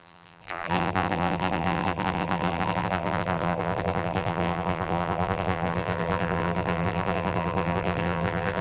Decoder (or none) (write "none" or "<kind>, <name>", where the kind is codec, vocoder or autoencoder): vocoder, BigVGAN v2